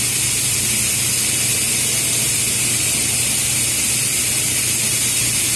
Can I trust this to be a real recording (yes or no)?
yes